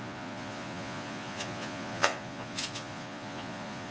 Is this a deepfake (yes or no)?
yes